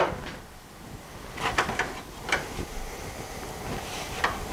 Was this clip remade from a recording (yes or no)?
no